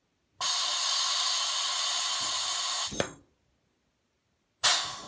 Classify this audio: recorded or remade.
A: recorded